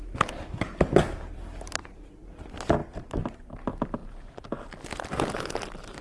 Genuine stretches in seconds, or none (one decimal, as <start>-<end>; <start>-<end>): none